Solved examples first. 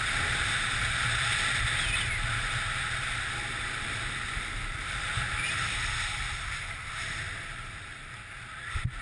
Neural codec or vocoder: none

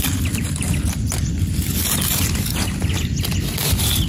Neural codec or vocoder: vocoder, BigVGAN v2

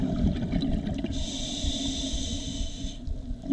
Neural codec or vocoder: none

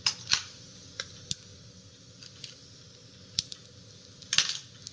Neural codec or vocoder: none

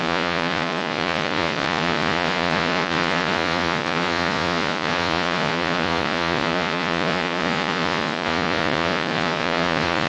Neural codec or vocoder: vocoder, Vocos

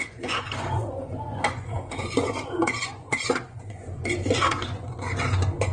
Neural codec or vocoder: vocoder, Vocos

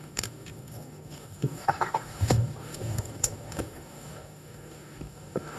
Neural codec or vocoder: codec, DAC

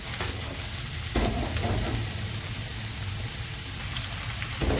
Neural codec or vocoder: none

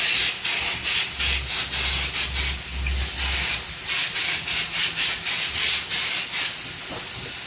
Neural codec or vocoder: none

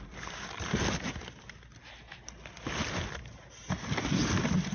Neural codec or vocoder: none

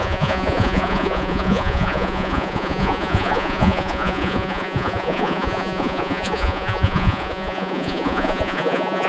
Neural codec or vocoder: vocoder, Vocos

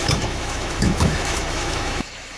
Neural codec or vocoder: autoencoder, DAC-VAE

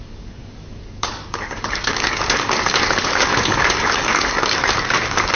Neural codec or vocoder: codec, DAC